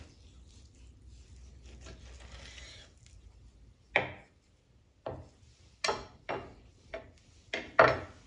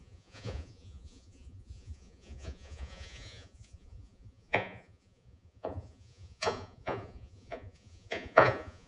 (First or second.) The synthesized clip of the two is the second